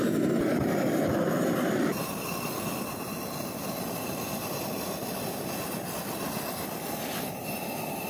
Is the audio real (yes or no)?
no